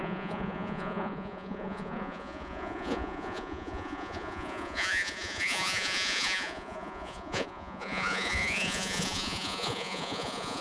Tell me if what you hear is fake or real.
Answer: fake